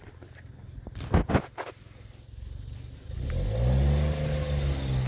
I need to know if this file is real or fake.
real